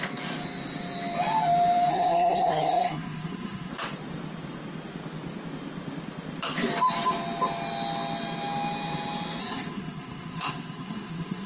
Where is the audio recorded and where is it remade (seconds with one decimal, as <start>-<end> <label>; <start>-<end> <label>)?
0.0-1.9 recorded; 1.9-3.7 remade; 3.7-9.4 recorded; 9.4-11.5 remade

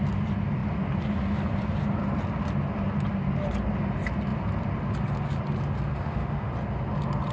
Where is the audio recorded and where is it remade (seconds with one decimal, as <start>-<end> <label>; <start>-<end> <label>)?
0.0-5.9 recorded; 5.9-6.5 remade; 6.5-7.3 recorded

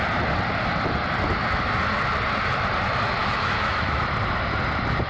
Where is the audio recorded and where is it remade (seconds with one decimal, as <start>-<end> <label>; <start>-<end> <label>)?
0.0-3.2 recorded; 3.2-4.0 remade; 4.0-5.1 recorded

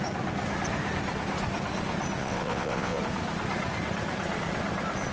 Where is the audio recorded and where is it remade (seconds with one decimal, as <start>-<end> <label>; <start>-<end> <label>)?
0.0-2.2 recorded; 2.2-3.0 remade; 3.0-5.1 recorded

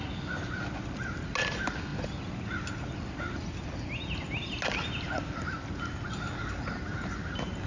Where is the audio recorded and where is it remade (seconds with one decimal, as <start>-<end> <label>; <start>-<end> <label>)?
0.0-7.7 recorded

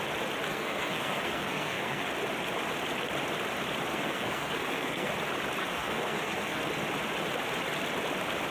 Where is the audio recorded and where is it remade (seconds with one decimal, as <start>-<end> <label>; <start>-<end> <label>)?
0.0-0.5 recorded; 0.5-2.1 remade; 2.1-3.9 recorded; 3.9-5.1 remade; 5.1-5.6 recorded; 5.6-6.6 remade; 6.6-8.5 recorded

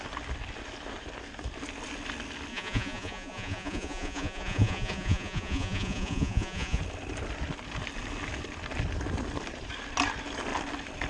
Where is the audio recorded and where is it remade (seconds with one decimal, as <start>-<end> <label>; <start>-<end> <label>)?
0.0-2.5 recorded; 2.5-6.8 remade; 6.8-11.1 recorded